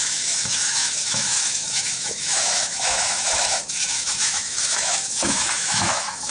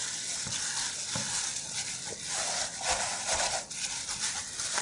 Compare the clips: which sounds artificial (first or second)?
first